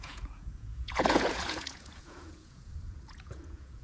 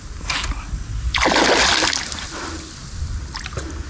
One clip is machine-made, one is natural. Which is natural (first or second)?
second